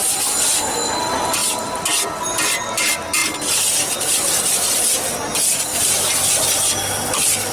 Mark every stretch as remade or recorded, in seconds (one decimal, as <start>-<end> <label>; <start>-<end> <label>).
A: 0.0-1.4 recorded; 1.4-2.2 remade; 2.2-3.2 recorded; 3.2-4.0 remade; 4.0-7.5 recorded

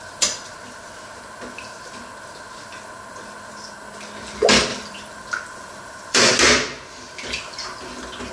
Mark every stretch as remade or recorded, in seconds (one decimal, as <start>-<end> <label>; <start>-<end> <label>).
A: 0.0-4.7 recorded; 4.7-6.3 remade; 6.3-8.3 recorded